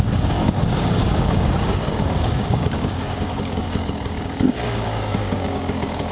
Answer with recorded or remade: remade